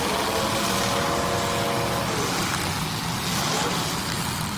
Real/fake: real